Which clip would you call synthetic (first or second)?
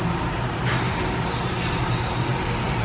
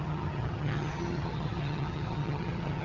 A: second